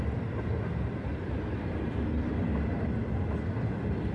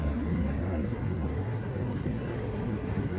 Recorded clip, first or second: first